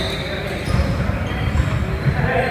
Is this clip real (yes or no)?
yes